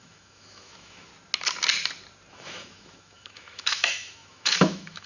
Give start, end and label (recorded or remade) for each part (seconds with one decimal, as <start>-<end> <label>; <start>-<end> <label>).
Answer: 0.0-1.1 remade; 1.1-2.3 recorded; 2.3-5.1 remade